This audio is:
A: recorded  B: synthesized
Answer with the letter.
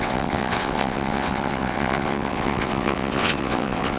B